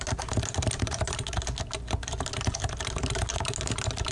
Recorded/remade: recorded